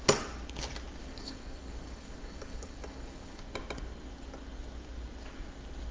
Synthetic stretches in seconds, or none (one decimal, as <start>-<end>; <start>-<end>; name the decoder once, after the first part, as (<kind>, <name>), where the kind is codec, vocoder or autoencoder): 1.0-3.4 (codec, DAC)